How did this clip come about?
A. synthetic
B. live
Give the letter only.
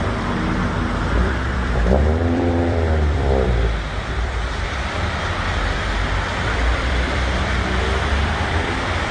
A